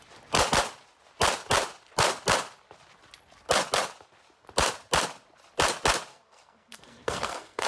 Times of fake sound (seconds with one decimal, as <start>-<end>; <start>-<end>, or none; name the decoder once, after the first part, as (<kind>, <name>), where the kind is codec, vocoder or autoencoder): 6.1-7.7 (codec, SNAC)